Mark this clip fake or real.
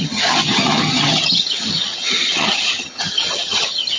fake